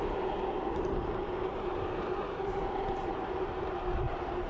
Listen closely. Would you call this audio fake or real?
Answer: fake